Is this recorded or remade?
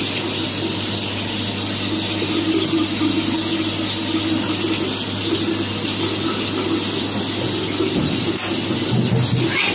recorded